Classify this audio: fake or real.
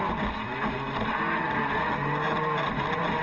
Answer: real